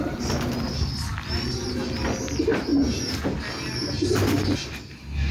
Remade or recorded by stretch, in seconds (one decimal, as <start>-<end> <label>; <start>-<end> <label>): 0.0-5.3 recorded